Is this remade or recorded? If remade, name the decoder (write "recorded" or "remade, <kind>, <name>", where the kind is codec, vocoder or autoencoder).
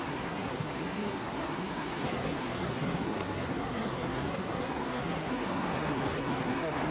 remade, codec, SNAC